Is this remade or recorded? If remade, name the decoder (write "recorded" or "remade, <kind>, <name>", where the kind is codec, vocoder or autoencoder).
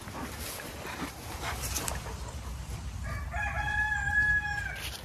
recorded